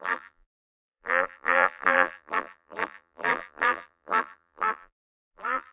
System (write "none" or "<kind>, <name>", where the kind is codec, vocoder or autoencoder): vocoder, BigVGAN v2